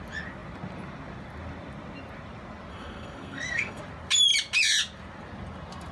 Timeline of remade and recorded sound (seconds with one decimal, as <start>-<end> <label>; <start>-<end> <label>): 0.0-2.7 recorded; 2.7-3.8 remade; 3.8-5.9 recorded